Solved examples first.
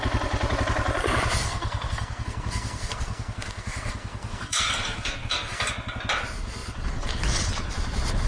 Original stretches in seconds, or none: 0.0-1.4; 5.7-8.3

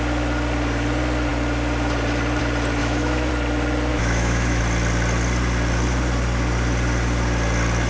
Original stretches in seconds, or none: 0.0-2.8; 3.3-3.9; 4.6-7.9

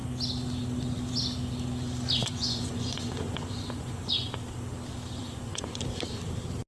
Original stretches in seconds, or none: 0.0-2.2; 4.1-5.2; 5.8-6.7

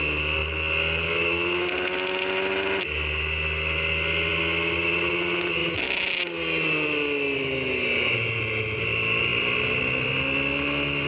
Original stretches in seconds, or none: 0.0-5.6; 6.2-9.3; 10.1-11.1